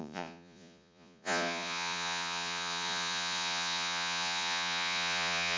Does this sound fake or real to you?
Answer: fake